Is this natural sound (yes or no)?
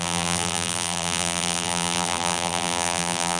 no